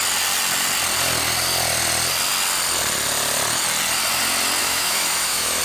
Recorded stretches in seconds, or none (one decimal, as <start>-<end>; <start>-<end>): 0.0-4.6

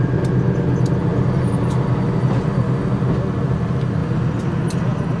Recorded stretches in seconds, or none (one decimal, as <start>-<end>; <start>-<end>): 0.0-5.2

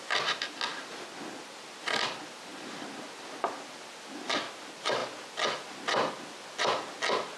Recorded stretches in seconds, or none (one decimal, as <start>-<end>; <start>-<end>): 0.0-7.4

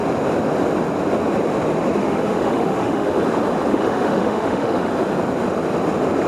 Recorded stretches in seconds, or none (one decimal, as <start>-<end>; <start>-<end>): 0.0-2.0; 3.2-3.7; 4.9-6.3

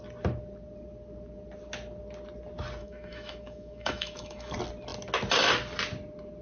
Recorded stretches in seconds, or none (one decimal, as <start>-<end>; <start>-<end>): 0.0-2.8; 4.5-6.4

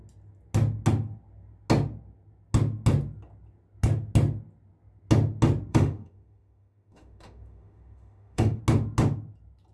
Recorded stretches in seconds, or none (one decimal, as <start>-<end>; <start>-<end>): 0.0-5.7; 8.6-9.7

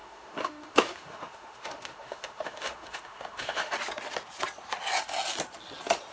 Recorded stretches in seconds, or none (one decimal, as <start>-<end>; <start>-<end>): 3.7-6.1

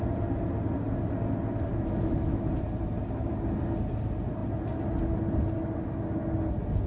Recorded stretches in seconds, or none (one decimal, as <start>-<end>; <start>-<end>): 0.0-1.7; 2.5-6.9